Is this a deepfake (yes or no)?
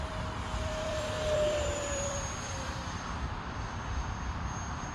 yes